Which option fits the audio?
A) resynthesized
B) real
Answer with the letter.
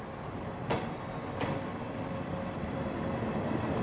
B